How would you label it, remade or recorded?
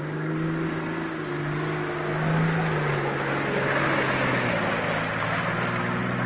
recorded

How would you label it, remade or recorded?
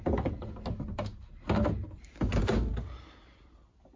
recorded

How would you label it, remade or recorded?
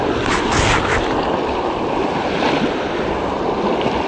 recorded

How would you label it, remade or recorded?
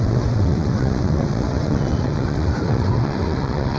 remade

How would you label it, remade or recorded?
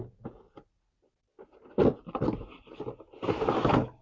recorded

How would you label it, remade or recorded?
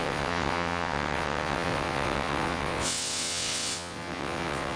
remade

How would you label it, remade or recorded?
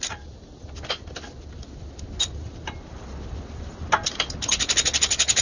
recorded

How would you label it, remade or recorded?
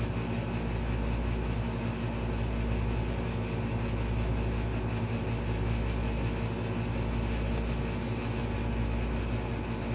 recorded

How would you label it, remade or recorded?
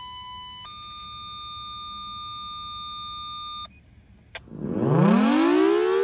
recorded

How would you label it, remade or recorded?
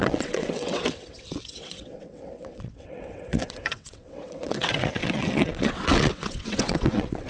remade